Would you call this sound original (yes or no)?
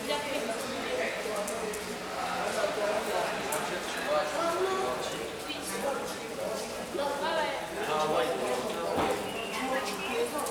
yes